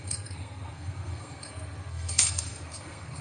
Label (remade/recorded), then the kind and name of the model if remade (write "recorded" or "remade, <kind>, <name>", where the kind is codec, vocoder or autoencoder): remade, codec, SNAC